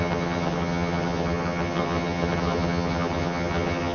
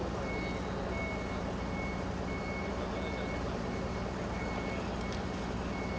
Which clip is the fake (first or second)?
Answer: first